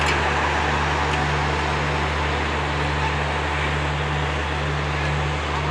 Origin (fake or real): real